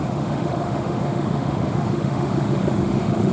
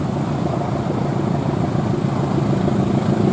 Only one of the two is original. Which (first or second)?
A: second